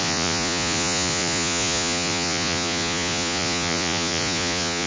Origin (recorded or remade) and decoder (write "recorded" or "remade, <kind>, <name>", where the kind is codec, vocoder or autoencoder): remade, vocoder, Vocos